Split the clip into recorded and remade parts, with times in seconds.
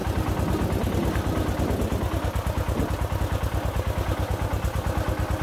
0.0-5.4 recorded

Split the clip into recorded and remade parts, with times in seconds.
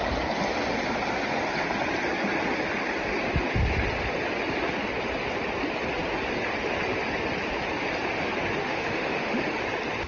0.0-8.6 recorded; 8.6-9.6 remade; 9.6-10.1 recorded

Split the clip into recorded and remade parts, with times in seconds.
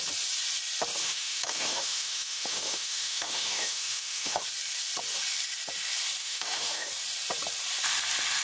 0.0-1.0 recorded; 1.0-4.4 remade; 4.4-6.2 recorded; 6.2-6.9 remade; 6.9-8.4 recorded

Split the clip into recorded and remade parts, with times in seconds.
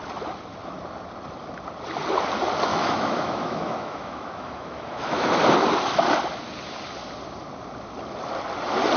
0.0-2.7 recorded; 2.7-5.3 remade; 5.3-9.0 recorded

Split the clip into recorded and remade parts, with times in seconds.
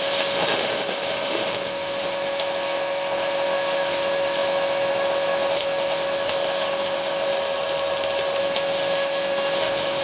0.0-7.3 remade; 7.3-8.4 recorded; 8.4-10.0 remade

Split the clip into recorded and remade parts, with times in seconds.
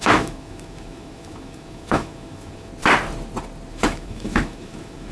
0.0-2.7 remade; 2.7-3.7 recorded; 3.7-5.1 remade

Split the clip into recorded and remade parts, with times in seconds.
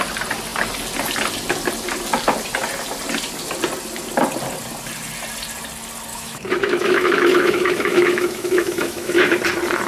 0.0-6.1 recorded; 6.1-9.4 remade; 9.4-9.9 recorded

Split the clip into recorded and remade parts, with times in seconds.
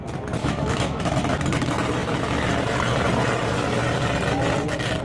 0.0-0.4 recorded; 0.4-1.1 remade; 1.1-5.0 recorded